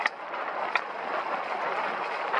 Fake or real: real